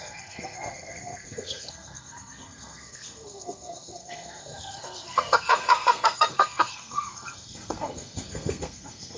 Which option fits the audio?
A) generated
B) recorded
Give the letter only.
A